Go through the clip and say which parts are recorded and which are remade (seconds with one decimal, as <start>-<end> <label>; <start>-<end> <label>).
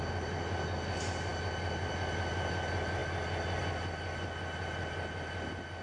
0.0-5.8 recorded